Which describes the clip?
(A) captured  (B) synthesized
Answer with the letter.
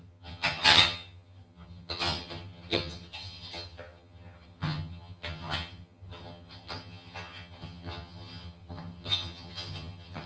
B